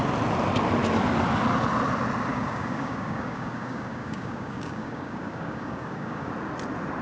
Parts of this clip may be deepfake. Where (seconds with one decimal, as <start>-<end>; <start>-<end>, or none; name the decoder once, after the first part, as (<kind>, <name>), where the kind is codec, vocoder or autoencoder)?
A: 2.3-6.3 (codec, DAC)